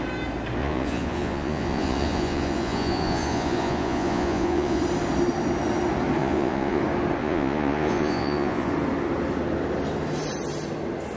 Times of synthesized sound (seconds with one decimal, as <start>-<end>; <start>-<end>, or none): 0.6-4.8; 6.2-6.8; 7.2-8.7